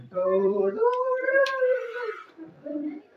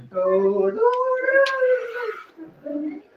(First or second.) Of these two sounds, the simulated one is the first